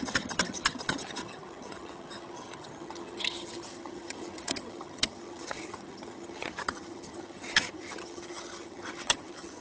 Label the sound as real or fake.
fake